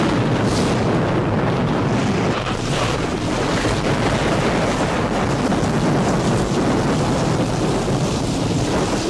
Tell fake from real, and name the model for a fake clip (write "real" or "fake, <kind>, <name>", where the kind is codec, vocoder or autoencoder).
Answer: real